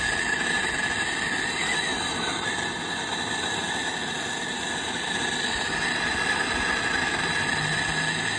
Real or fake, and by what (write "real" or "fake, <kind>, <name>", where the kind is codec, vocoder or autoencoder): real